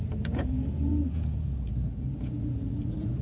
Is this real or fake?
fake